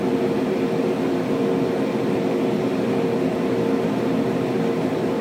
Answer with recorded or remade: recorded